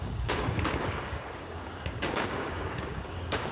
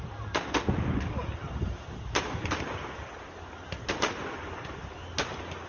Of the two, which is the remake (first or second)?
first